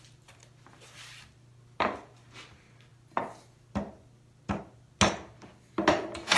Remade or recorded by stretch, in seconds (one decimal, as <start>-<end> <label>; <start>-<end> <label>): 0.0-6.4 recorded